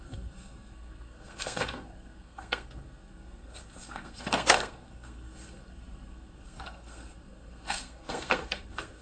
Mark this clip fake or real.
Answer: fake